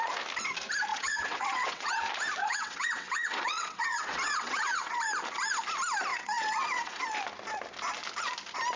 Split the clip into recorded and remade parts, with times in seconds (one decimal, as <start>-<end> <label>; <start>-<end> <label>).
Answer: 0.0-0.9 recorded; 0.9-1.9 remade; 1.9-2.4 recorded; 2.4-5.0 remade; 5.0-6.1 recorded; 6.1-7.0 remade; 7.0-8.8 recorded